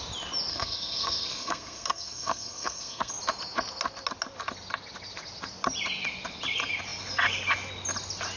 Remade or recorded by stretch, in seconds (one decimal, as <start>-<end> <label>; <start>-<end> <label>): 0.0-0.5 recorded; 0.5-3.1 remade; 3.1-8.4 recorded